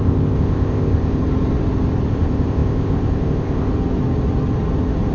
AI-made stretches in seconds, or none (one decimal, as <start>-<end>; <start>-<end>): 0.0-1.2; 2.1-3.7